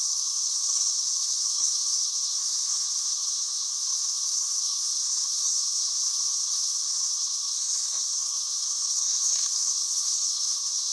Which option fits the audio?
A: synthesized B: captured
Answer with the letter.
A